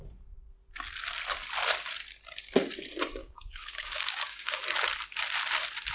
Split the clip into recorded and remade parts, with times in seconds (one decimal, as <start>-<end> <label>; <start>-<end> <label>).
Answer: 0.0-3.2 recorded; 3.2-4.6 remade; 4.6-5.9 recorded